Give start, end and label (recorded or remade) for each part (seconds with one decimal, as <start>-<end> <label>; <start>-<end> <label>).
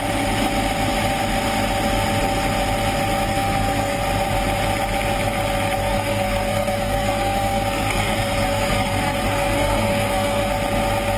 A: 0.0-3.3 recorded; 3.3-4.0 remade; 4.0-5.8 recorded; 5.8-10.5 remade; 10.5-11.2 recorded